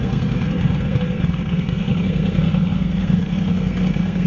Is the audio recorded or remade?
remade